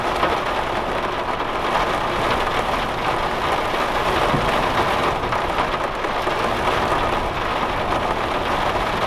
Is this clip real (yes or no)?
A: yes